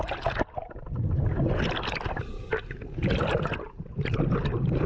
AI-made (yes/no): no